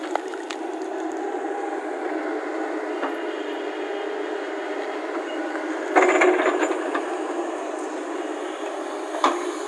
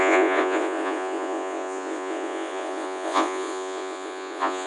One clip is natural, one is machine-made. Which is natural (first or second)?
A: first